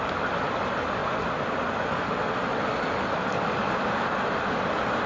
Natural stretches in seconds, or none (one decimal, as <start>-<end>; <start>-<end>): 0.0-5.1